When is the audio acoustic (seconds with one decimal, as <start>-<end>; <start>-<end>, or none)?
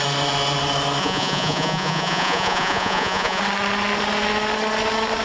0.0-1.0; 3.4-5.2